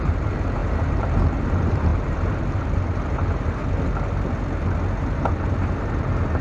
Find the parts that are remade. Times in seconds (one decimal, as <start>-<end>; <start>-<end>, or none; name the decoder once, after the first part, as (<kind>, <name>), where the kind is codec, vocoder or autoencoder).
0.0-3.6 (vocoder, BigVGAN v2); 5.2-6.4